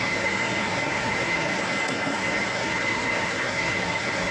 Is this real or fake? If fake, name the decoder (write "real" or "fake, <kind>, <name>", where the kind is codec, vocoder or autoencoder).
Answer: fake, codec, SNAC